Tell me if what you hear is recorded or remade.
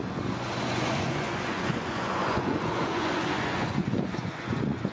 remade